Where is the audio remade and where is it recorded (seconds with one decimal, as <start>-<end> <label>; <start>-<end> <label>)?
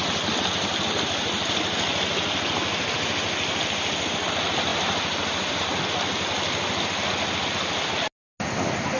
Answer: 0.0-4.7 recorded; 4.7-5.6 remade; 5.6-9.0 recorded